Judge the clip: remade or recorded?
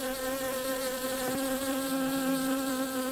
remade